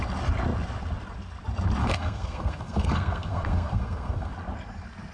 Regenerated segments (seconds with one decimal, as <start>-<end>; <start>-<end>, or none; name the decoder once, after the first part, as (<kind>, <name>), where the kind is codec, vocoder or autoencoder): 1.8-4.3 (codec, SNAC)